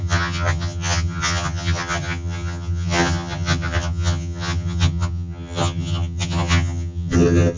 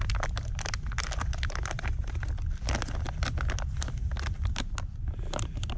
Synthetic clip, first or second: first